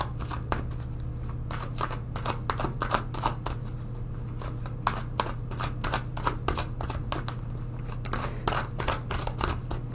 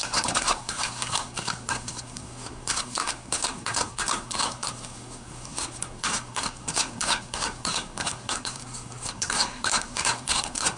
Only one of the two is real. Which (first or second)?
first